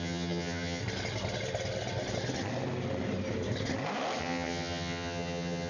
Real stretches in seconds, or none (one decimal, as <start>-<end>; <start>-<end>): 0.8-4.2